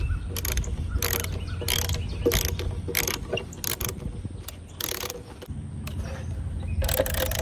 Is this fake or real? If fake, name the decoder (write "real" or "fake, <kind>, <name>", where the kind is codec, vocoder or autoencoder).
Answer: real